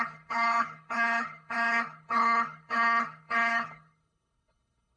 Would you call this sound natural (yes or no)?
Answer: no